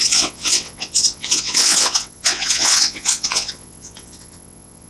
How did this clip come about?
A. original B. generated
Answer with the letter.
B